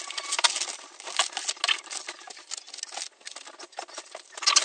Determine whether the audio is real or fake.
real